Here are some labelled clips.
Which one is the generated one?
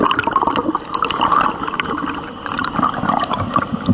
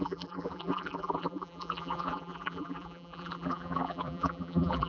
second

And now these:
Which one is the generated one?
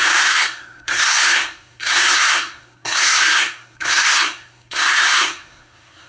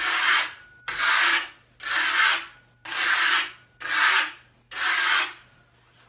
first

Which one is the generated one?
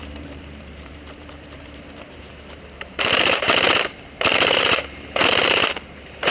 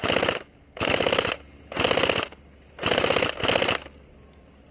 first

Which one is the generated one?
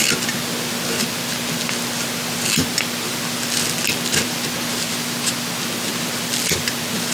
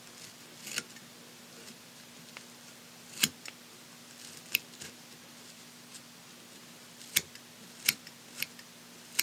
second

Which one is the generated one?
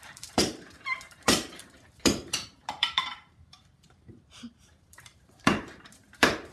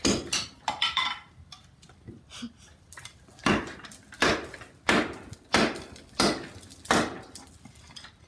first